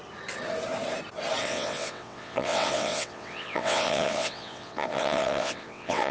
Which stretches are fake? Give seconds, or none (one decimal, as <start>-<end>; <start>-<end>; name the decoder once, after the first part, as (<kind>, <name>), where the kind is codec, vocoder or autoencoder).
1.4-6.1 (vocoder, WaveNeXt)